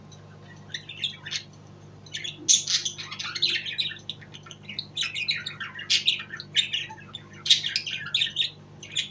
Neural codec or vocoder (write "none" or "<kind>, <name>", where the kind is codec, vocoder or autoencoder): none